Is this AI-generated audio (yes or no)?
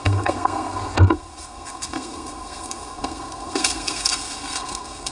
yes